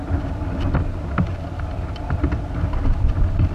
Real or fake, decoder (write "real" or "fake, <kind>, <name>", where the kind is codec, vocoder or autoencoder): real